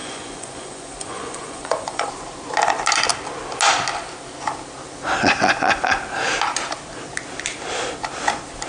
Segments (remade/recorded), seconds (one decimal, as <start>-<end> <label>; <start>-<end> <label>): 0.0-2.1 remade; 2.1-8.7 recorded